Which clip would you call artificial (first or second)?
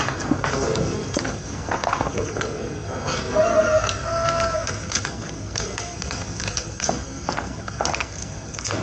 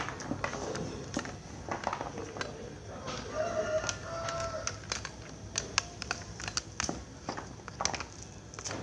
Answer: first